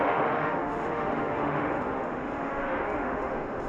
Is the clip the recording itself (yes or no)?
no